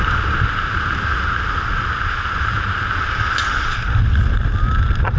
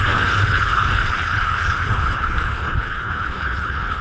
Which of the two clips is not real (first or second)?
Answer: second